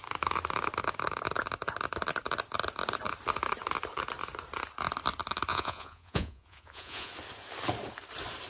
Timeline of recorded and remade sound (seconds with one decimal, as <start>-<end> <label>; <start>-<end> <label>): 0.0-5.5 recorded; 5.5-7.1 remade; 7.1-8.5 recorded